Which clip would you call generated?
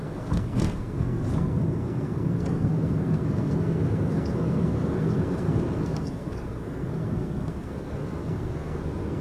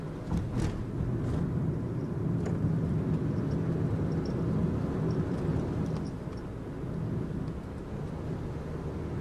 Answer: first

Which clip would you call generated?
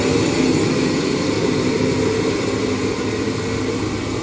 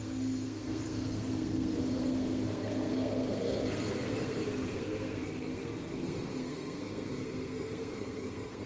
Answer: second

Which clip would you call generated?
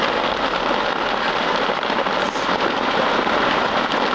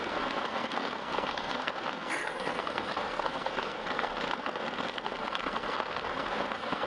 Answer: second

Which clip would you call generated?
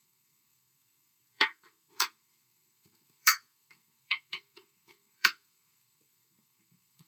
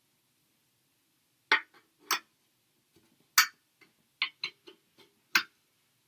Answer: first